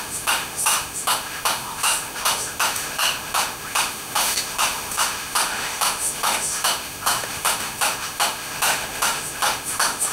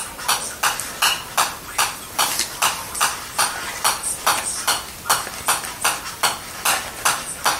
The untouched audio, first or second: second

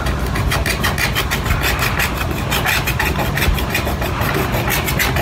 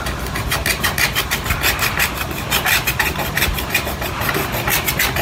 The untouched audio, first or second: first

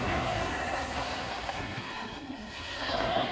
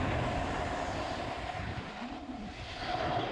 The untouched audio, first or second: second